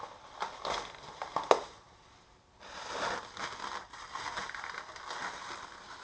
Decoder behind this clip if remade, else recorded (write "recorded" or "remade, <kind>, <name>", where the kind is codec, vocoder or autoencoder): recorded